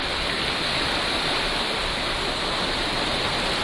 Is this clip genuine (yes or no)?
no